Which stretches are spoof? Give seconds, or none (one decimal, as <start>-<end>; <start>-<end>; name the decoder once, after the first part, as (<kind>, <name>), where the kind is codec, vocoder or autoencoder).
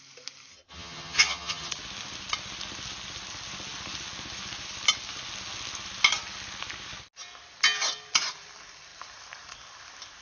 0.5-1.7 (vocoder, HiFi-GAN)